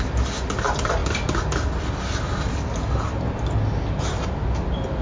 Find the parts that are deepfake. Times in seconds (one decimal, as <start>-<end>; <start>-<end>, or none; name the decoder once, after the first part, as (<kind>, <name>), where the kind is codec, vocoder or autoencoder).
none